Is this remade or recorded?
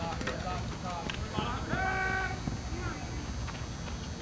recorded